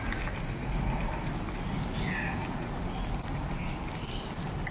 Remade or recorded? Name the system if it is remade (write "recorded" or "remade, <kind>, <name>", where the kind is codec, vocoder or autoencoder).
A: recorded